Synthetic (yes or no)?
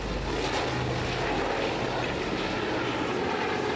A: no